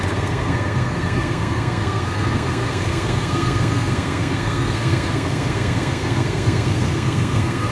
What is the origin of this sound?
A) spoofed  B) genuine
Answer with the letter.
A